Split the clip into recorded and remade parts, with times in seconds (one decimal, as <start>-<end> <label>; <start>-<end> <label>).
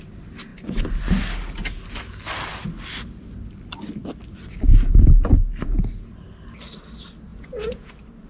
0.0-7.3 recorded; 7.3-7.9 remade; 7.9-8.3 recorded